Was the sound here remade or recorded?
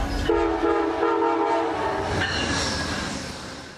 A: recorded